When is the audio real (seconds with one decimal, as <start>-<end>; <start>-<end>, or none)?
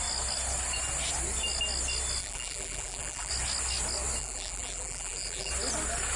0.0-2.2; 3.3-4.2; 5.5-6.2